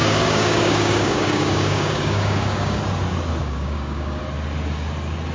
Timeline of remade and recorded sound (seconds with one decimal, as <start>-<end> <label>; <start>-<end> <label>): 0.0-2.8 remade; 2.8-3.4 recorded; 3.4-4.2 remade; 4.2-5.3 recorded